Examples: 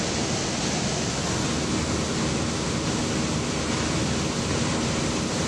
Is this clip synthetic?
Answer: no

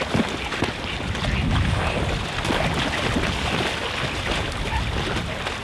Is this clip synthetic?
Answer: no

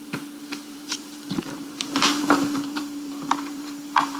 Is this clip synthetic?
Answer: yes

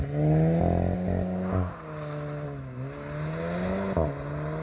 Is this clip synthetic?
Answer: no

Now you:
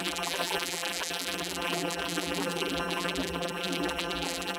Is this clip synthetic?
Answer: yes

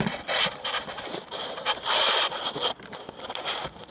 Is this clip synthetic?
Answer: no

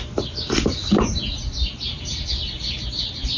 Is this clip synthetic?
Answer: no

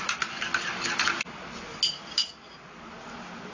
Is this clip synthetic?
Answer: no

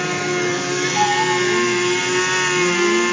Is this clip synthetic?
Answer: no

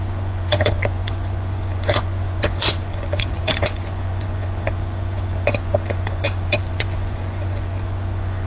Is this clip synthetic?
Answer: yes